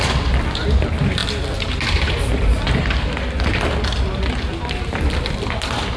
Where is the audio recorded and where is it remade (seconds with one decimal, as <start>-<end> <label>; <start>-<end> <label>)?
0.0-6.0 recorded